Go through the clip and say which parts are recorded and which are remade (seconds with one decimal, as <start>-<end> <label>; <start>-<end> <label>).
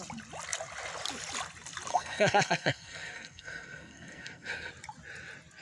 0.0-1.9 recorded; 1.9-4.7 remade; 4.7-5.6 recorded